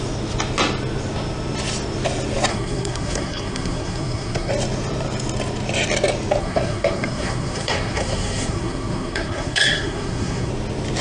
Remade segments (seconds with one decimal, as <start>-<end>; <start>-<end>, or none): 2.5-4.5; 6.4-10.5